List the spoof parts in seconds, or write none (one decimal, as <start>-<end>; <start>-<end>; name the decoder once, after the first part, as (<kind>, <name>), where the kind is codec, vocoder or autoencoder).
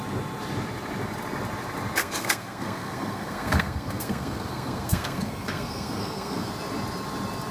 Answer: 2.0-6.5 (codec, SNAC)